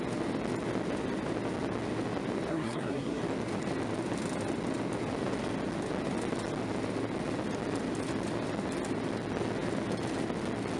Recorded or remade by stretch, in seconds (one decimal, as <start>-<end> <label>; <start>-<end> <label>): 0.0-2.5 recorded; 2.5-3.2 remade; 3.2-10.8 recorded